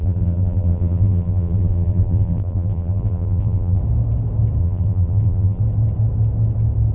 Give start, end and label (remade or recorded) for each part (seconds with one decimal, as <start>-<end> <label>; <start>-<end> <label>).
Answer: 0.0-3.8 remade; 3.8-4.6 recorded; 4.6-5.6 remade; 5.6-6.9 recorded